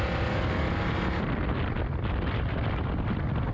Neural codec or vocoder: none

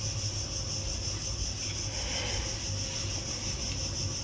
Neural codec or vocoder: none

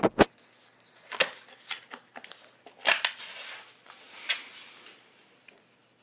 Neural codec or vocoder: none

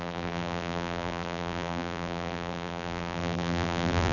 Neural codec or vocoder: vocoder, BigVGAN v2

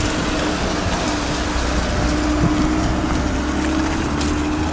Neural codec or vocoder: none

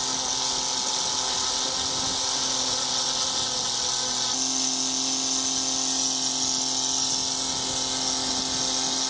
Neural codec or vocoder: none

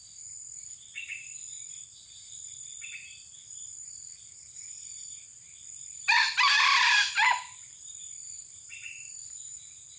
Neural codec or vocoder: vocoder, BigVGAN v2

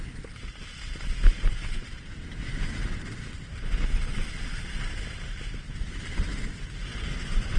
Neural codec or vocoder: none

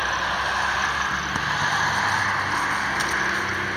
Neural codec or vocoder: none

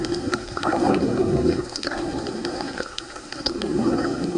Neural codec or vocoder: codec, SNAC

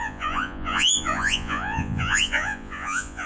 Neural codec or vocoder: vocoder, Vocos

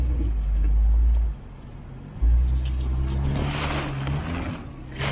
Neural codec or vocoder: none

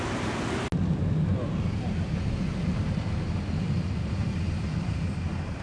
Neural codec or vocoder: none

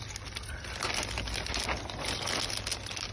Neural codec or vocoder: none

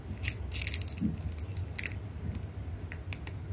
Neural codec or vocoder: none